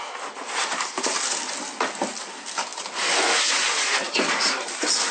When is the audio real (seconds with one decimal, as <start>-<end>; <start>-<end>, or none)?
0.0-5.1